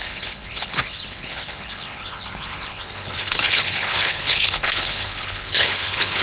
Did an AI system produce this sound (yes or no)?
yes